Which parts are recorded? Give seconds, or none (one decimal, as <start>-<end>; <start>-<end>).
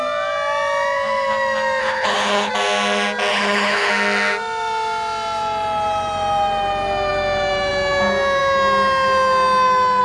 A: 0.0-1.8; 2.5-3.3; 3.9-10.0